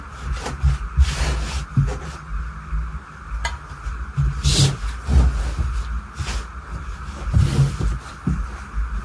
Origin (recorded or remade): recorded